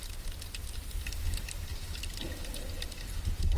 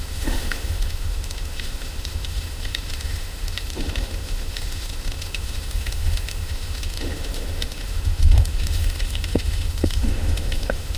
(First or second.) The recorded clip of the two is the first